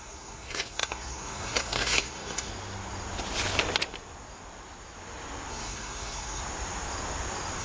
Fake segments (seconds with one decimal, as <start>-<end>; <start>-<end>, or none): 0.0-2.5; 5.5-6.4